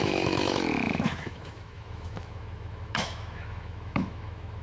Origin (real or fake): fake